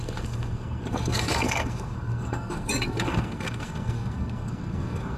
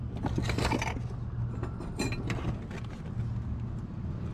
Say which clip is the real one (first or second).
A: second